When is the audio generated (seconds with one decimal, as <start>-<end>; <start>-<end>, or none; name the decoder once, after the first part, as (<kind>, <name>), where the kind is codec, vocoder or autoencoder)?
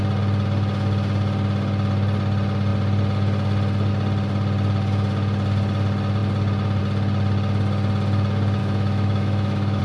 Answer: 8.6-9.8 (autoencoder, DAC-VAE)